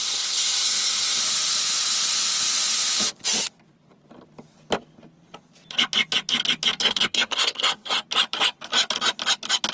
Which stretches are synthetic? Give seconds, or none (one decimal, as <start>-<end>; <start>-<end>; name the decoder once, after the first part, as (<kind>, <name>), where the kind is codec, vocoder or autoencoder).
0.0-1.2 (codec, SNAC); 6.8-8.0